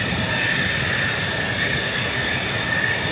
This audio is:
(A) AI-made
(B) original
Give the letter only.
B